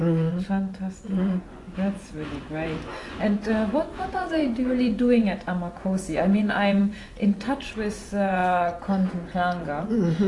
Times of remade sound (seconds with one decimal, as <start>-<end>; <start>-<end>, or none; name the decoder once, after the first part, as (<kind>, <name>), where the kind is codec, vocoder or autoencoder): 0.0-10.3 (vocoder, Vocos)